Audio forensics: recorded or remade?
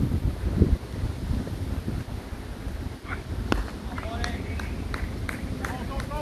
recorded